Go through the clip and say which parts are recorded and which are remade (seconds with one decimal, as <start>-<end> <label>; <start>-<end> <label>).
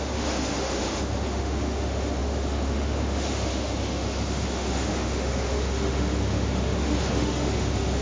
0.0-8.0 remade